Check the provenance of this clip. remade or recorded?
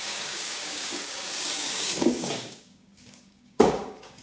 remade